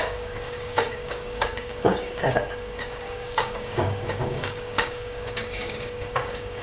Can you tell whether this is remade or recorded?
remade